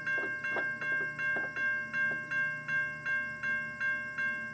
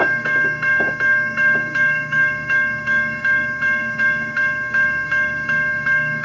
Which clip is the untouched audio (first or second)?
first